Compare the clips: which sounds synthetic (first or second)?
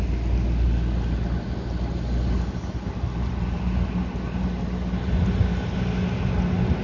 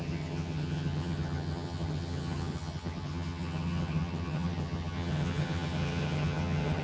second